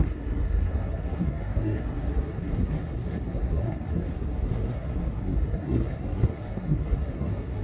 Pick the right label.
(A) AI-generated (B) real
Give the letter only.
A